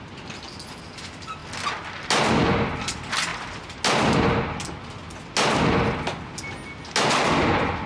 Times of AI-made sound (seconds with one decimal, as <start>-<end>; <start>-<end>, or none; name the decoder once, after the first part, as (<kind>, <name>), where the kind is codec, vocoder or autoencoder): none